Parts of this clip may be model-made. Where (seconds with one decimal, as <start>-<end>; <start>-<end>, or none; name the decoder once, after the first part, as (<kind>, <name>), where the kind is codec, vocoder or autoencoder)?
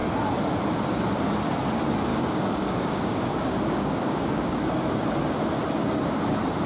2.1-4.6 (codec, DAC)